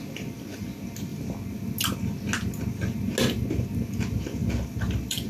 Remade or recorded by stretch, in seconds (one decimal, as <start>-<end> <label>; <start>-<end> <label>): 0.0-5.3 recorded